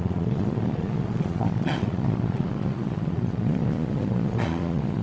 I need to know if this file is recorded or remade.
remade